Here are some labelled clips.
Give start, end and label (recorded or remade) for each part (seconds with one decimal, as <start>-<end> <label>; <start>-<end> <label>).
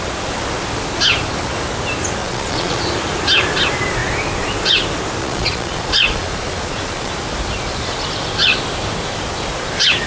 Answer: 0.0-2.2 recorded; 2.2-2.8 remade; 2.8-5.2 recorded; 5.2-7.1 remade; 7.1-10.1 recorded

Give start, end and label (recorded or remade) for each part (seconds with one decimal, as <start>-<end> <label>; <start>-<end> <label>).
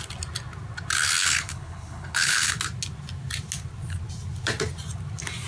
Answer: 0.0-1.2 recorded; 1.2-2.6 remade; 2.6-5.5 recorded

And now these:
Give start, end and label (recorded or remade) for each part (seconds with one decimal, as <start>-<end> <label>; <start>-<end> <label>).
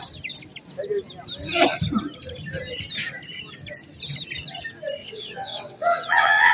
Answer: 0.0-5.0 recorded; 5.0-6.5 remade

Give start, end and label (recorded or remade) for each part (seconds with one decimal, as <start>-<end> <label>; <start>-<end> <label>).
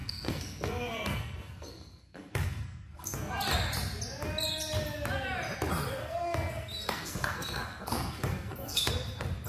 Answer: 0.0-3.3 remade; 3.3-6.0 recorded; 6.0-8.9 remade; 8.9-9.5 recorded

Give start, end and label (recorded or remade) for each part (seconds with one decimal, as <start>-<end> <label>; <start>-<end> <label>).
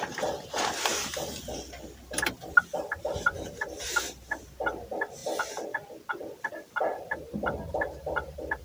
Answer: 0.0-0.9 remade; 0.9-2.6 recorded; 2.6-5.2 remade; 5.2-6.6 recorded; 6.6-8.6 remade